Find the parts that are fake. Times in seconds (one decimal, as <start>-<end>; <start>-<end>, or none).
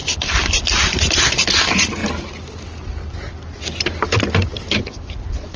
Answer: none